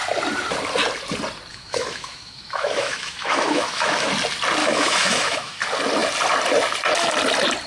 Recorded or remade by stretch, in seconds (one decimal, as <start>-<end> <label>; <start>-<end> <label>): 0.0-1.5 recorded; 1.5-4.1 remade; 4.1-4.6 recorded; 4.6-5.6 remade; 5.6-7.7 recorded